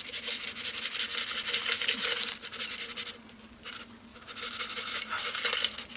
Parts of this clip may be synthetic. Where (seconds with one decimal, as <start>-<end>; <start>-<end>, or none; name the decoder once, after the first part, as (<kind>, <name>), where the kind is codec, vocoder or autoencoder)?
4.1-5.0 (autoencoder, DAC-VAE)